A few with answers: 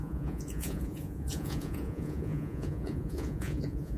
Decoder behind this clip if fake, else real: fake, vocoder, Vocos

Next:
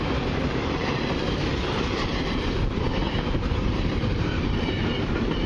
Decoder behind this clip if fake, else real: fake, vocoder, BigVGAN v2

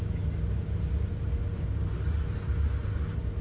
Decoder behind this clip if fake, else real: real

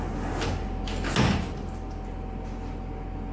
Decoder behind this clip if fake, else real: real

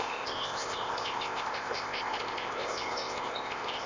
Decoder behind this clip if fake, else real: fake, codec, ZipCodec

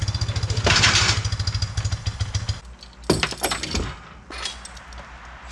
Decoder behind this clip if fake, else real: real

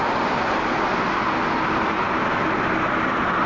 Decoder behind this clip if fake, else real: real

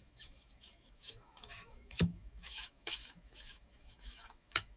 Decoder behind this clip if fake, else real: fake, autoencoder, DAC-VAE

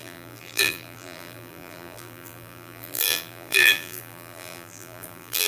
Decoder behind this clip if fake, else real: fake, vocoder, BigVGAN v2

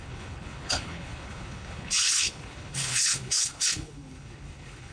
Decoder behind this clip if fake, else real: fake, codec, HILCodec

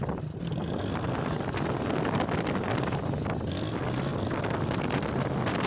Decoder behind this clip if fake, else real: real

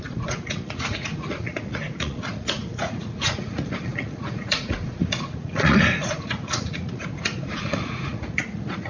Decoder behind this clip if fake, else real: fake, vocoder, Vocos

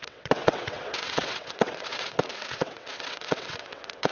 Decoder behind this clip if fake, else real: fake, vocoder, WaveNeXt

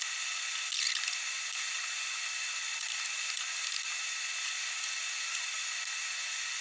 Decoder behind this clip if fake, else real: real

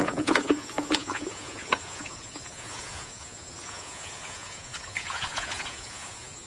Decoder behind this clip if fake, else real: fake, vocoder, Vocos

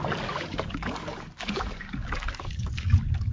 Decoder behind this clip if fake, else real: fake, codec, DAC